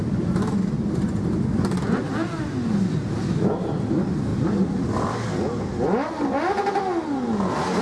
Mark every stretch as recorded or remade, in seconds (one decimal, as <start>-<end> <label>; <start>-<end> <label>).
0.0-7.8 recorded